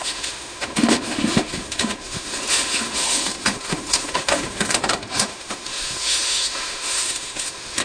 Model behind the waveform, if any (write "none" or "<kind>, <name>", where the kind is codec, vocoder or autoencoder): autoencoder, DAC-VAE